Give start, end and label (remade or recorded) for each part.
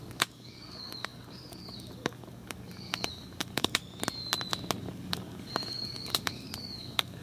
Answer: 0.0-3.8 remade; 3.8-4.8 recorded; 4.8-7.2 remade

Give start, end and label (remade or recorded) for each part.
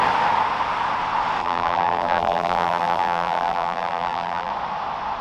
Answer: 0.0-1.4 recorded; 1.4-4.5 remade; 4.5-5.2 recorded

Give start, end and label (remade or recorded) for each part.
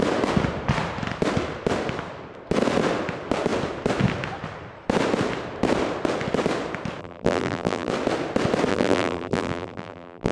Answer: 0.0-7.0 recorded; 7.0-7.9 remade; 7.9-8.7 recorded; 8.7-10.3 remade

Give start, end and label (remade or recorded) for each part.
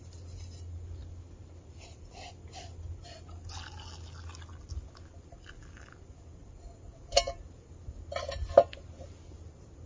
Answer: 0.0-9.9 recorded